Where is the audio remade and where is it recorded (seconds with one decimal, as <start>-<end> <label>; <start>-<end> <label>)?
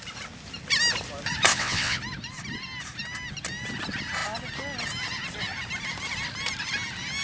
0.0-1.5 recorded; 1.5-2.0 remade; 2.0-7.2 recorded